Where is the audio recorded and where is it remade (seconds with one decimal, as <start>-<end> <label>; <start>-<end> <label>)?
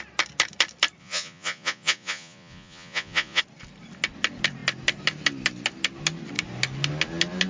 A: 0.0-1.0 recorded; 1.0-3.4 remade; 3.4-7.5 recorded